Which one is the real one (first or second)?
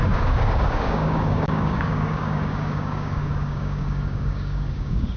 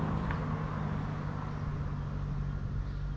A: second